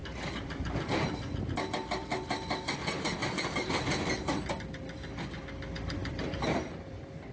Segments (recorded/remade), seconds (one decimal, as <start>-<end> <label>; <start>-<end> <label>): 0.0-0.9 remade; 0.9-2.0 recorded; 2.0-4.1 remade; 4.1-6.0 recorded; 6.0-7.3 remade

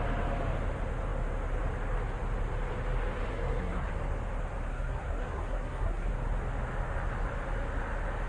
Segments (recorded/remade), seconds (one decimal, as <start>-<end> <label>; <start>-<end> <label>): 0.0-3.3 recorded; 3.3-3.9 remade; 3.9-4.7 recorded; 4.7-6.1 remade; 6.1-8.3 recorded

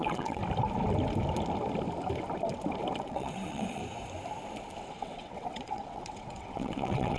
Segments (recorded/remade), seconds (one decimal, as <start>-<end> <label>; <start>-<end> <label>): 0.0-0.4 remade; 0.4-3.0 recorded; 3.0-3.8 remade; 3.8-4.8 recorded; 4.8-7.2 remade

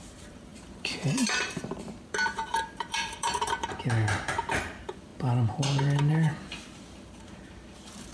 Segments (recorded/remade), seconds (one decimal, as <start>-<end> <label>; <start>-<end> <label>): 0.0-8.1 remade

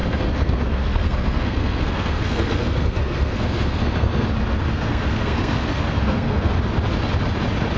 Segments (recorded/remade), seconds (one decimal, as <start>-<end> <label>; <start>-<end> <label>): 0.0-4.3 remade; 4.3-4.7 recorded; 4.7-6.5 remade; 6.5-7.8 recorded

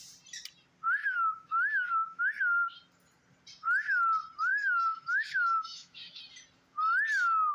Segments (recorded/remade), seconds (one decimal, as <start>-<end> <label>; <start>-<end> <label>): 0.0-1.0 recorded; 1.0-2.2 remade; 2.2-4.5 recorded; 4.5-6.2 remade; 6.2-7.5 recorded

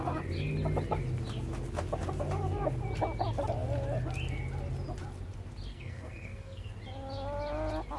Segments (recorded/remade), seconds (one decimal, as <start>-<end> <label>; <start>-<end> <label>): 0.0-5.7 recorded; 5.7-6.7 remade; 6.7-8.0 recorded

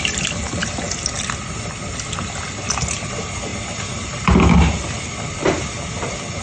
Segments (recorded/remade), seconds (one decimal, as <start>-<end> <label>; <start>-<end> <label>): 0.0-6.4 recorded